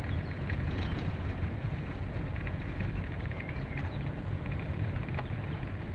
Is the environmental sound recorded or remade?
remade